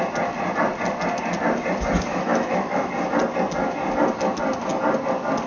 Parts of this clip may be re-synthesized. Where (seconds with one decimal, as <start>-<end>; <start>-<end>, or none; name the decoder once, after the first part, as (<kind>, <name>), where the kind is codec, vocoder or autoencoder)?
2.1-2.9 (autoencoder, DAC-VAE)